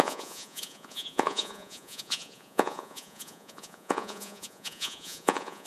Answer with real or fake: fake